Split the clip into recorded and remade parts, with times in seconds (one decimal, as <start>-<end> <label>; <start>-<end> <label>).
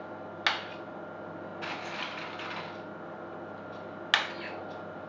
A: 0.0-5.1 recorded